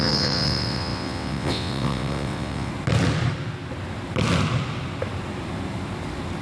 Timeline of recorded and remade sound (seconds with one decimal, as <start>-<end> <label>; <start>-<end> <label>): 0.0-2.7 remade; 2.7-6.4 recorded